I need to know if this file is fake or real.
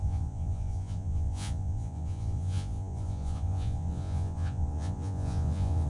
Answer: fake